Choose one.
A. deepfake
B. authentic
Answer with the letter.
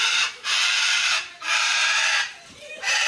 A